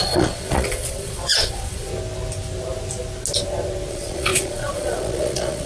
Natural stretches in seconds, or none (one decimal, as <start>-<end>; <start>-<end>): 1.9-3.9